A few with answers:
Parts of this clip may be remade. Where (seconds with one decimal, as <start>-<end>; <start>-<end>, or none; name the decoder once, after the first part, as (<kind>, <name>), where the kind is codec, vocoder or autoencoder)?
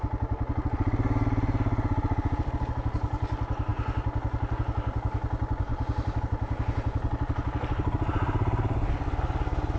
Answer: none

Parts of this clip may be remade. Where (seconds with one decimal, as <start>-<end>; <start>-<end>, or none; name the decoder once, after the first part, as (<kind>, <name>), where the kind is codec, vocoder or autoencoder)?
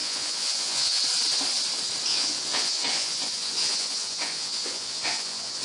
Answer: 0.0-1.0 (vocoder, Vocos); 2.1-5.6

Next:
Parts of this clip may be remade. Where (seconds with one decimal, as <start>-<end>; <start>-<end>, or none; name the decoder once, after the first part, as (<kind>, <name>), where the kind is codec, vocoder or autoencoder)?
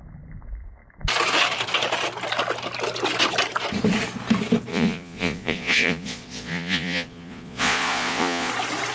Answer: 4.7-8.5 (vocoder, Vocos)